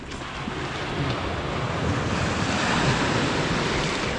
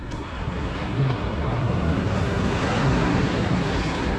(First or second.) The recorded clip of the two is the first